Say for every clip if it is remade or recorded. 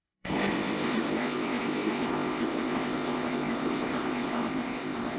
remade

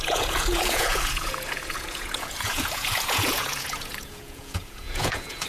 remade